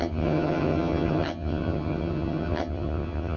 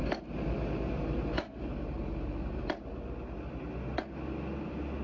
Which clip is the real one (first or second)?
second